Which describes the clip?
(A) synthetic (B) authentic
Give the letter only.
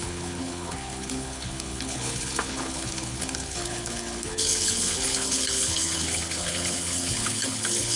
A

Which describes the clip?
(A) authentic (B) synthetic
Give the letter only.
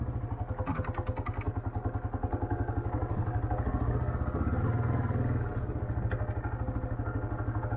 A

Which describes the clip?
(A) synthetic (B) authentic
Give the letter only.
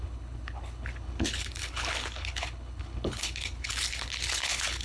A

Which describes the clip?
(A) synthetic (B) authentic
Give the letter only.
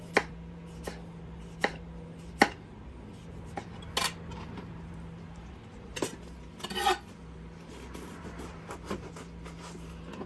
B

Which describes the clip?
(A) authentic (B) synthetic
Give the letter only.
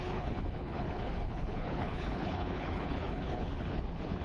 B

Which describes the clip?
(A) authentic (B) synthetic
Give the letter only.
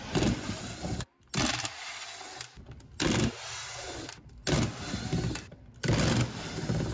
A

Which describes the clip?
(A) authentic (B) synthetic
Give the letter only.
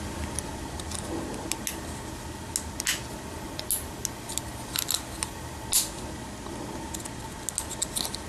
A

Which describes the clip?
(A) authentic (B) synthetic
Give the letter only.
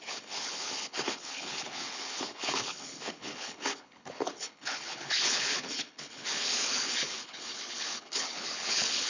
B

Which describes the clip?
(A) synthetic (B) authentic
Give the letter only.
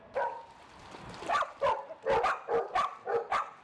B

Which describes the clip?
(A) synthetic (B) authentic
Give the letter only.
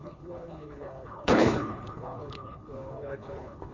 A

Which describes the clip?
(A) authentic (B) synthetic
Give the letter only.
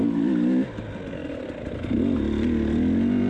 A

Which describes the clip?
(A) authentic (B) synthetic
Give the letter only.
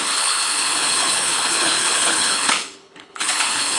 B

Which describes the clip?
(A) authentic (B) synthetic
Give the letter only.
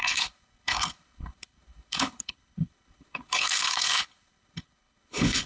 B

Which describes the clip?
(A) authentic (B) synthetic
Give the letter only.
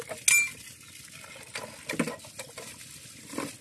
A